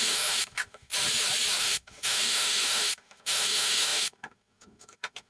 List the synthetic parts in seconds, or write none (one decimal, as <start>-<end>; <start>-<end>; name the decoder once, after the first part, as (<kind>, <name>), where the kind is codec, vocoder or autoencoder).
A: 0.0-0.9 (autoencoder, DAC-VAE); 1.6-5.3